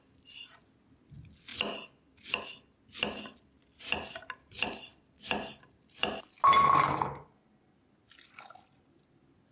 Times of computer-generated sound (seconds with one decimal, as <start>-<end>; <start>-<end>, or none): none